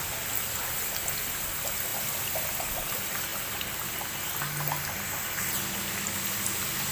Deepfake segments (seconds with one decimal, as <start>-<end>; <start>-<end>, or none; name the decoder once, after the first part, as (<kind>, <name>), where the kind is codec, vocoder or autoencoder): 1.9-2.5 (vocoder, BigVGAN v2)